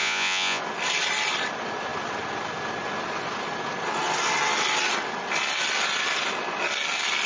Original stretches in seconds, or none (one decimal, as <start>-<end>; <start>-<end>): 0.6-7.3

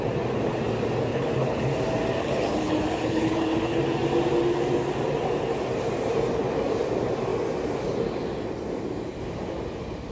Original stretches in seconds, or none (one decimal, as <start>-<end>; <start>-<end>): 0.0-1.1; 1.7-2.2; 3.8-10.1

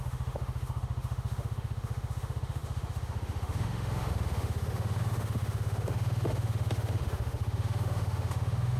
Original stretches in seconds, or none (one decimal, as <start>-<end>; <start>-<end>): none

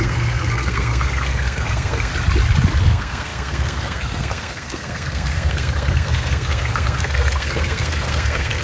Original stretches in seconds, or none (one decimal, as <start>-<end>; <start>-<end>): 2.1-2.8

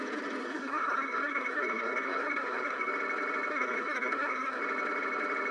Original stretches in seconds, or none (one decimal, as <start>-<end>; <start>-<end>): 0.0-0.4; 2.9-3.5; 4.6-5.5

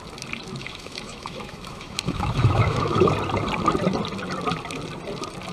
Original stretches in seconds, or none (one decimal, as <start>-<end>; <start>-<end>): 0.0-0.6; 3.1-5.5